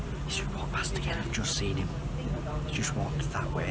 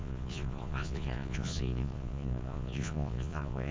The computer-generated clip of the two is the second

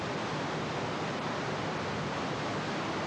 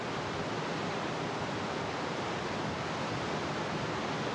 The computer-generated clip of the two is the second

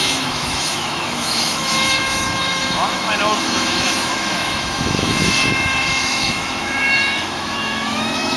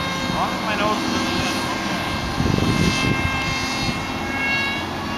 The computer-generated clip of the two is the first